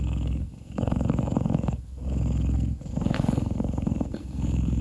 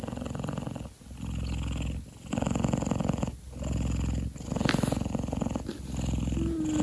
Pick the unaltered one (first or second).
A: second